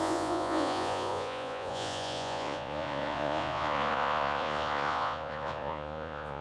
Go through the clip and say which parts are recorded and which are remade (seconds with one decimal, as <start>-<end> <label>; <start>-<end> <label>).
0.0-6.4 remade